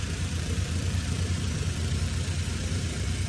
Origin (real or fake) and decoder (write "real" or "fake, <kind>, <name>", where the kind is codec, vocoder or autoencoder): fake, vocoder, BigVGAN v2